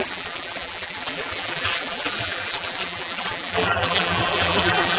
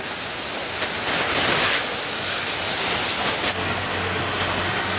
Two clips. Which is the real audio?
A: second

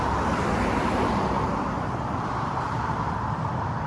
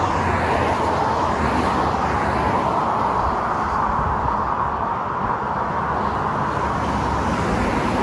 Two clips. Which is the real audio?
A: second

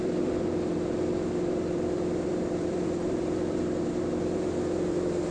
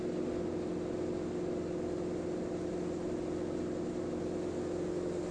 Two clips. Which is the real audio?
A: second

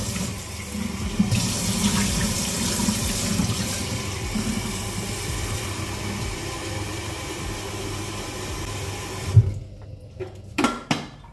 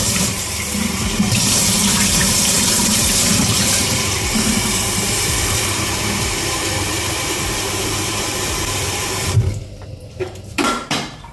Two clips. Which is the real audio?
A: first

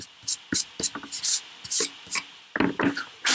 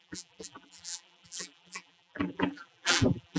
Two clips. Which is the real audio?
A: first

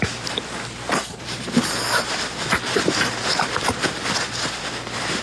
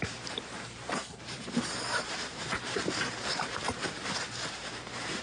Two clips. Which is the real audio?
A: first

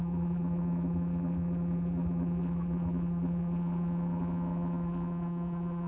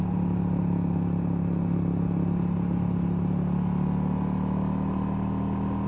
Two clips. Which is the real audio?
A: second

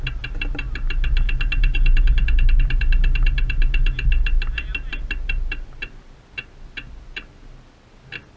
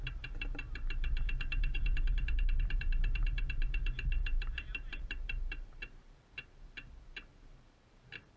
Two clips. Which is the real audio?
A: first